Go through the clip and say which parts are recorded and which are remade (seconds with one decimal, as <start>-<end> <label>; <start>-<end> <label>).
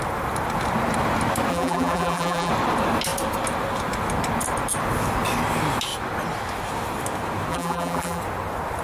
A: 0.0-1.5 recorded; 1.5-2.5 remade; 2.5-7.5 recorded; 7.5-8.2 remade; 8.2-8.8 recorded